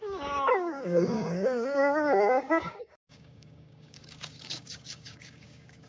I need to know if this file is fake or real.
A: fake